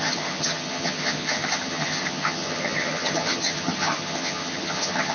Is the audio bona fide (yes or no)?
no